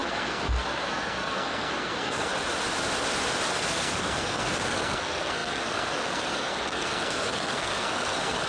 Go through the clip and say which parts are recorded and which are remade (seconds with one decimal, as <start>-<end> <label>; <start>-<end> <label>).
0.0-2.3 remade; 2.3-3.5 recorded; 3.5-8.5 remade